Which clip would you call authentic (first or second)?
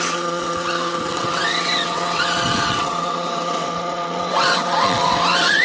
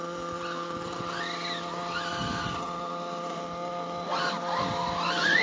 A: second